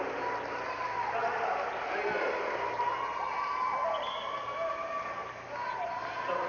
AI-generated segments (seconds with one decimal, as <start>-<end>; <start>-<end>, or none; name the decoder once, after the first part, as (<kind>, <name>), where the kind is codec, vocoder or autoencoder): none